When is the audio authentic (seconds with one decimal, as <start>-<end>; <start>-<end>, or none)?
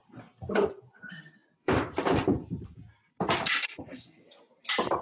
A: 0.0-1.4; 4.4-5.0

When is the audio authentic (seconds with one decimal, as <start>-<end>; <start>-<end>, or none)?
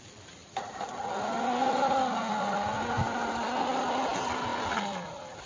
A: 1.6-3.6; 4.5-5.1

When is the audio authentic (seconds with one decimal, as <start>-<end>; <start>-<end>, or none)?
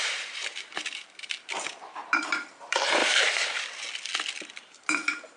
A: 3.0-4.4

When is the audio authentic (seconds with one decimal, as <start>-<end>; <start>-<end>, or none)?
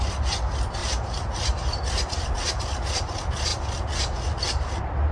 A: 0.0-0.8; 2.8-5.1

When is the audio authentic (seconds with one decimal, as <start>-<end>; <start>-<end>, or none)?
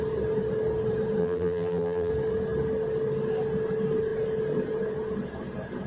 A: 0.0-1.2; 2.1-5.9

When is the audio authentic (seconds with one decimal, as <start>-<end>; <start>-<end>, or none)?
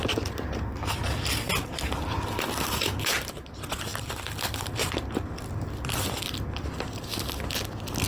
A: 7.1-8.1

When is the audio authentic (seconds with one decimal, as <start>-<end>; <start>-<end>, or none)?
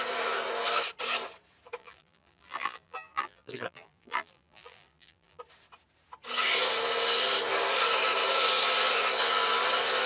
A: 0.0-1.8; 5.4-10.1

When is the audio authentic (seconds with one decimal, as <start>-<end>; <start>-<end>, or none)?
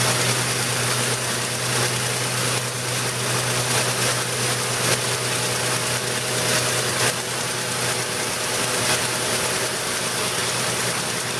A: 0.0-11.4